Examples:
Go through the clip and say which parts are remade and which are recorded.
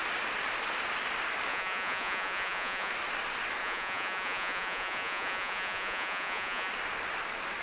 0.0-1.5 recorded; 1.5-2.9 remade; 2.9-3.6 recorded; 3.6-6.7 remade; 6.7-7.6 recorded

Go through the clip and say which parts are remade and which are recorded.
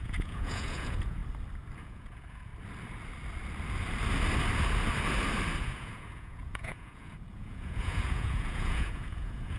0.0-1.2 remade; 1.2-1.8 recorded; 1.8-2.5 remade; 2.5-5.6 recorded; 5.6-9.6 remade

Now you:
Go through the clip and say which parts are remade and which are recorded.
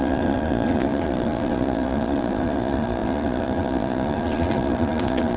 0.0-5.4 remade